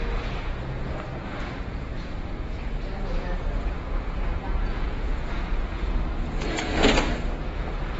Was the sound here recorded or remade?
remade